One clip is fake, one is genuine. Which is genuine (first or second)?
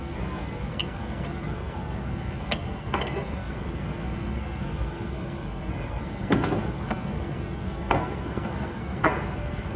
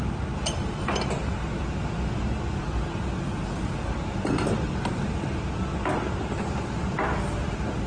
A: second